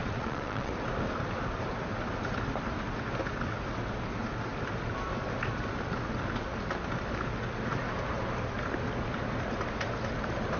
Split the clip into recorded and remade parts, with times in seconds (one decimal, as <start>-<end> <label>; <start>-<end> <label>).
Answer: 0.0-0.7 remade; 0.7-10.6 recorded

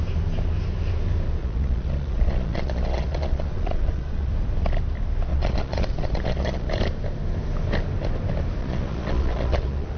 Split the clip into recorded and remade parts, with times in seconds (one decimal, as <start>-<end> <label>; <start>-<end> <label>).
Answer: 0.0-1.4 recorded; 1.4-4.3 remade; 4.3-5.3 recorded; 5.3-6.7 remade; 6.7-8.6 recorded; 8.6-10.0 remade